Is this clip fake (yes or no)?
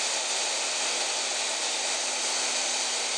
no